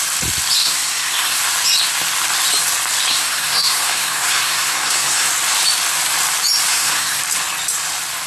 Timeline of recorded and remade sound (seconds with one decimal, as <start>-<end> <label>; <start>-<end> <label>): 0.0-0.6 recorded; 0.6-1.4 remade; 1.4-3.1 recorded; 3.1-5.3 remade; 5.3-6.7 recorded; 6.7-7.2 remade; 7.2-8.3 recorded

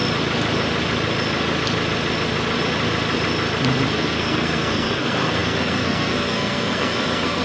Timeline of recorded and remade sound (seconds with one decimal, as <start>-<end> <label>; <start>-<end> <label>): 0.0-3.9 recorded; 3.9-7.4 remade

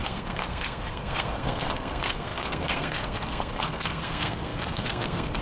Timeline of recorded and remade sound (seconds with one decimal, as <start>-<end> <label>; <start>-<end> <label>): 0.0-5.4 remade